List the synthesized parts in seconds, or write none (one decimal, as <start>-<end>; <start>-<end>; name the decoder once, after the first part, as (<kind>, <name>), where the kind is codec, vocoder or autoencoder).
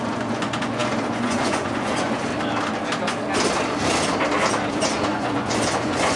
0.0-2.3 (vocoder, Vocos); 4.7-6.2